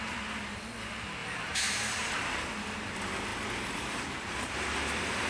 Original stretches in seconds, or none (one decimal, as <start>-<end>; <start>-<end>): 0.0-1.2; 2.5-5.3